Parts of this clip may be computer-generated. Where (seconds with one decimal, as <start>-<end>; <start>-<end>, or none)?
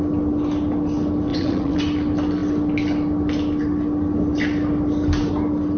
1.3-1.8